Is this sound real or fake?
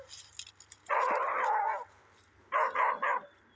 real